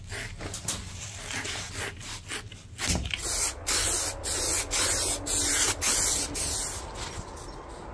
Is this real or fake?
real